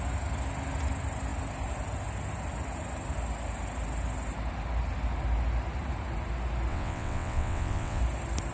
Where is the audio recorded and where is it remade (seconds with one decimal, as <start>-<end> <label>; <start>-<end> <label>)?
0.0-6.7 recorded; 6.7-8.0 remade; 8.0-8.5 recorded